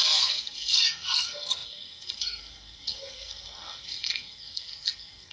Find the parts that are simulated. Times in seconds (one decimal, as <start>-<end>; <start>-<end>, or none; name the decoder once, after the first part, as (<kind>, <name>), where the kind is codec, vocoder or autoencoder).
0.0-5.3 (codec, SNAC)